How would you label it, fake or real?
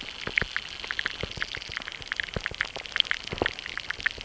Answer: real